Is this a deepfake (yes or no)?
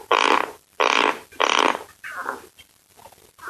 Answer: yes